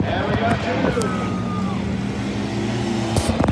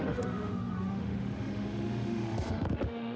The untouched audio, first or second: first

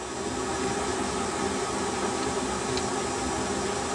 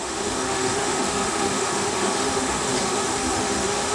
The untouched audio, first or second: first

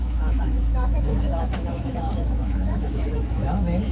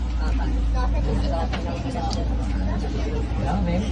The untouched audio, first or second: second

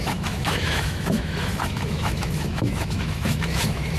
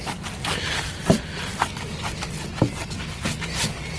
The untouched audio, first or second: second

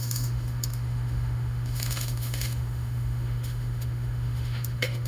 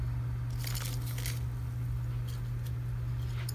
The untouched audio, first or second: second